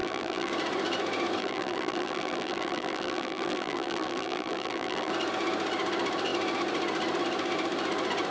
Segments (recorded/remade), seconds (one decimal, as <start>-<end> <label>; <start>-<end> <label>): 0.0-0.5 remade; 0.5-1.4 recorded; 1.4-5.1 remade; 5.1-8.3 recorded